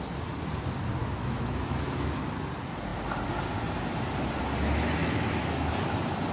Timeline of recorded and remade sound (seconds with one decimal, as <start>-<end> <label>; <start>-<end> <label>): 0.0-1.0 recorded; 1.0-2.2 remade; 2.2-5.0 recorded; 5.0-5.7 remade; 5.7-6.3 recorded